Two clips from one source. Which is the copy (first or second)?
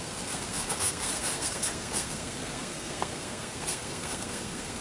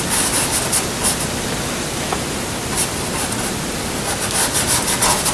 first